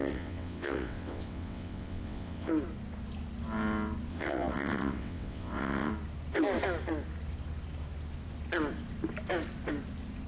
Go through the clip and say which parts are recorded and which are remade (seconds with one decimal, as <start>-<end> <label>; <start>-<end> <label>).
0.0-2.5 remade; 2.5-4.1 recorded; 4.1-5.9 remade; 5.9-10.3 recorded